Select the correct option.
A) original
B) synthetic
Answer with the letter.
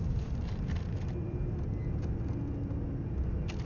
A